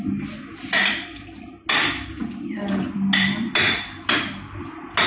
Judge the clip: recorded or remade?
recorded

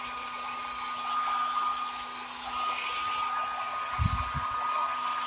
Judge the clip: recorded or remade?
recorded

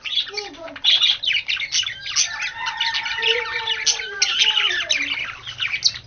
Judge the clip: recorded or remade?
recorded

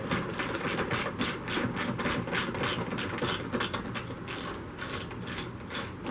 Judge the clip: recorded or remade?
recorded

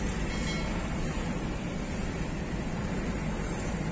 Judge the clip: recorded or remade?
recorded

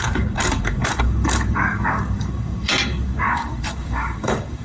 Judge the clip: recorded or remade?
remade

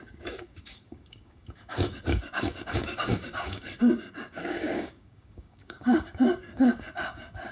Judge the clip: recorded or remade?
remade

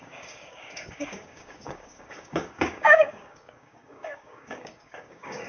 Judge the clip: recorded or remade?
remade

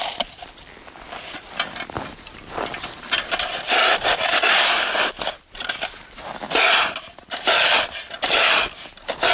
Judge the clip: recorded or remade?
recorded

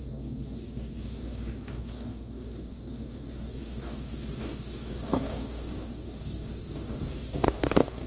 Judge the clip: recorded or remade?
remade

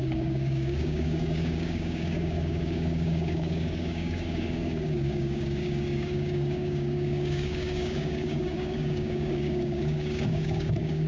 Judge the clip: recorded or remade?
remade